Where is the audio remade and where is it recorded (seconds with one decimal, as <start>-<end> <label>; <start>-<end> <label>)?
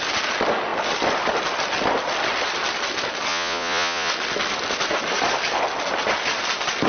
0.0-3.3 recorded; 3.3-4.1 remade; 4.1-6.9 recorded